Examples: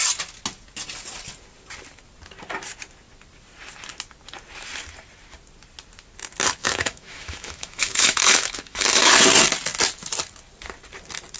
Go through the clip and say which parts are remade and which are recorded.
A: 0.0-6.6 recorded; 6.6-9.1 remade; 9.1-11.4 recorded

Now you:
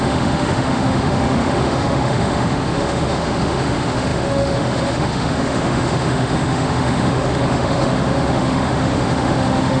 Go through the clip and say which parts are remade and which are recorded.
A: 0.0-9.8 remade

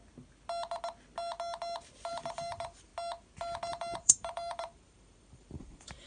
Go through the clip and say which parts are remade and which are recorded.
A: 0.0-2.1 recorded; 2.1-2.9 remade; 2.9-3.7 recorded; 3.7-6.1 remade